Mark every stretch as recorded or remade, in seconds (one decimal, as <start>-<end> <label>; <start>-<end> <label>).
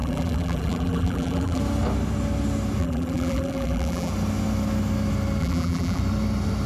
0.0-1.6 remade; 1.6-2.8 recorded; 2.8-4.1 remade; 4.1-5.4 recorded; 5.4-6.0 remade; 6.0-6.7 recorded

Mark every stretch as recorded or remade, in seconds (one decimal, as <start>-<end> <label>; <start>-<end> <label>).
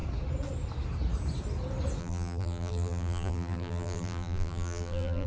0.0-2.0 recorded; 2.0-5.3 remade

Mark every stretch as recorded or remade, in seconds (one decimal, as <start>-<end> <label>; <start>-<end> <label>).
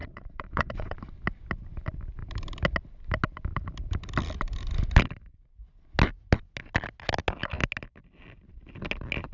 0.0-1.0 remade; 1.0-9.3 recorded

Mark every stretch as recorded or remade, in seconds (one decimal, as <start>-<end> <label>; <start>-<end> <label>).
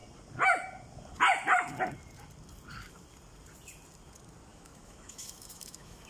0.0-4.5 recorded; 4.5-6.1 remade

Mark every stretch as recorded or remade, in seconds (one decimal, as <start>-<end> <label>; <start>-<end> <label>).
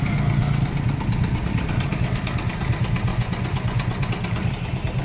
0.0-3.1 recorded; 3.1-4.1 remade; 4.1-5.0 recorded